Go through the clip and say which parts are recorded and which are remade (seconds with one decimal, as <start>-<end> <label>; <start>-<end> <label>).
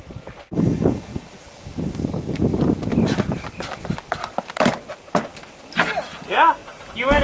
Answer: 0.0-1.1 recorded; 1.1-1.8 remade; 1.8-7.2 recorded